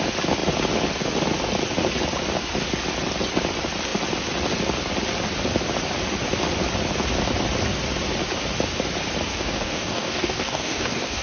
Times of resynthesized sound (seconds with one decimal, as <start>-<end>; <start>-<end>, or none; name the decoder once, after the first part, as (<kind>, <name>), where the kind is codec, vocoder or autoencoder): 9.3-11.2 (codec, DAC)